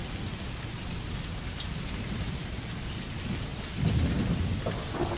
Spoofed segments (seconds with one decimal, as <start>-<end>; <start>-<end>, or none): none